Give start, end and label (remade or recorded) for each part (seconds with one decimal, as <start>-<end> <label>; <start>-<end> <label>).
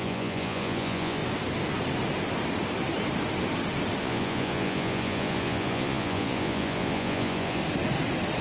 0.0-1.2 remade; 1.2-4.0 recorded; 4.0-7.6 remade; 7.6-8.4 recorded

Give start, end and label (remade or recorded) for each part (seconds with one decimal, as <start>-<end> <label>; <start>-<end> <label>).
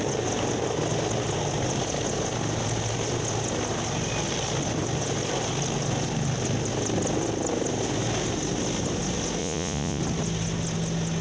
0.0-9.4 recorded; 9.4-10.0 remade; 10.0-11.2 recorded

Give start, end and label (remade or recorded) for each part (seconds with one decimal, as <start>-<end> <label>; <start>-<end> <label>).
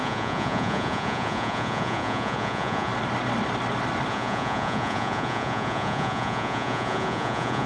0.0-2.9 remade; 2.9-4.1 recorded; 4.1-7.7 remade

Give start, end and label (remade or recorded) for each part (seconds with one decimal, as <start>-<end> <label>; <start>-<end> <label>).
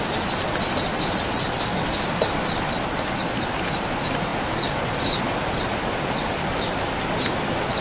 0.0-7.8 recorded